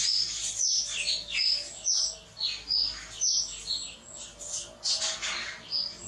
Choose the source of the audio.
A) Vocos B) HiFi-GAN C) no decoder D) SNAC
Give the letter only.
C